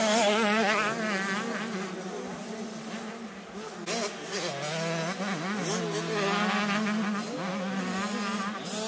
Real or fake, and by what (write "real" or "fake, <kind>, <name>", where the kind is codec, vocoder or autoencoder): real